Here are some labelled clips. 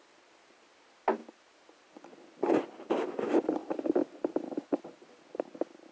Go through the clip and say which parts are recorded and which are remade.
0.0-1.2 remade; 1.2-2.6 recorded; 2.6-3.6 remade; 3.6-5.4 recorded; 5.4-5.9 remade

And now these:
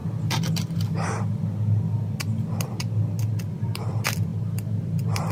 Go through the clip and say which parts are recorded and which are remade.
0.0-5.3 recorded

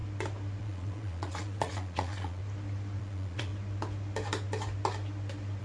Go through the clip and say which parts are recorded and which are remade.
0.0-0.6 recorded; 0.6-2.4 remade; 2.4-3.0 recorded; 3.0-3.5 remade; 3.5-5.6 recorded